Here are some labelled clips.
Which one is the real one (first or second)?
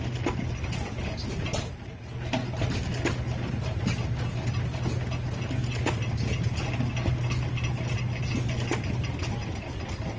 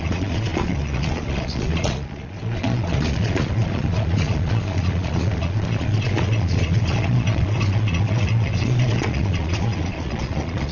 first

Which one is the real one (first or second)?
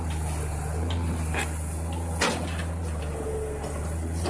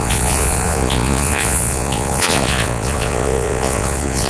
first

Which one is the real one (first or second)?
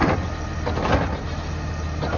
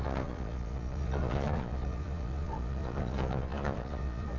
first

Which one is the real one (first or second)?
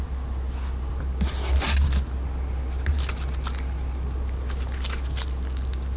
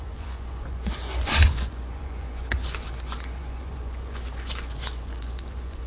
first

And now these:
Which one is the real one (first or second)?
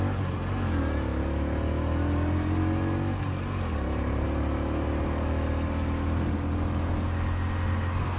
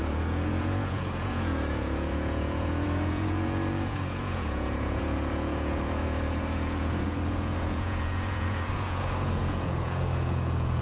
first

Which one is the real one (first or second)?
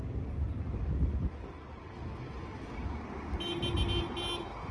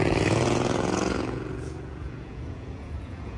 first